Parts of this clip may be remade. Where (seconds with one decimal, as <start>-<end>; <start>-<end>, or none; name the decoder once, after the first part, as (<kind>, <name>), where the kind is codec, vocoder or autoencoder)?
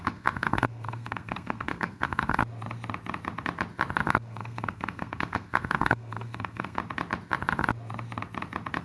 0.0-2.4 (codec, SNAC); 4.1-6.8